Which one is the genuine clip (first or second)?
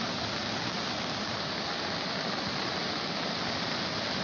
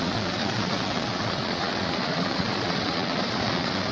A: first